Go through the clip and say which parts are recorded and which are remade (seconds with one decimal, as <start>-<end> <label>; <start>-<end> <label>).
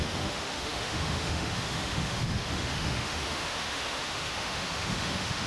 0.0-5.5 remade